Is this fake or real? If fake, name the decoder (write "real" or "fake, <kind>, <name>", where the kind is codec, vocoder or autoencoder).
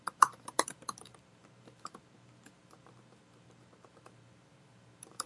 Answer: fake, vocoder, BigVGAN v2